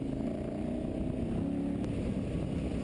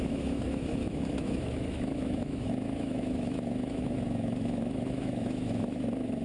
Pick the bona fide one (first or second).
first